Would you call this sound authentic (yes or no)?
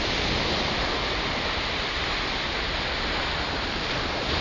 yes